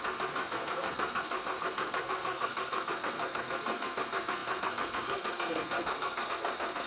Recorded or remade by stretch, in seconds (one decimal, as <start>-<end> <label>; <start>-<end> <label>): 0.0-6.9 remade